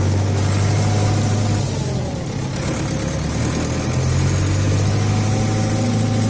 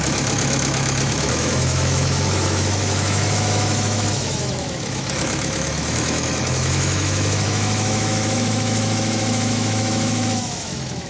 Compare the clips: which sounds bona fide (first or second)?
first